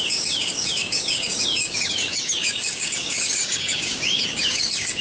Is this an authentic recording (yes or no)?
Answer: no